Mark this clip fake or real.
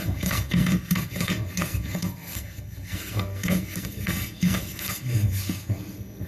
fake